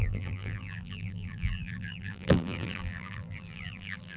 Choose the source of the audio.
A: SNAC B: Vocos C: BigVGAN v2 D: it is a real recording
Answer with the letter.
C